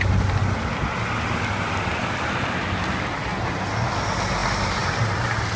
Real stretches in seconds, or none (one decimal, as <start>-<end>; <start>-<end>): 0.0-5.6